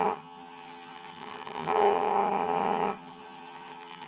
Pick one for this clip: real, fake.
fake